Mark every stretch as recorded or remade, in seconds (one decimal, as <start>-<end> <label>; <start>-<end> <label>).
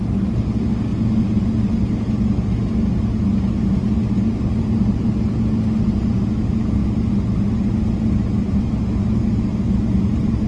0.0-10.5 recorded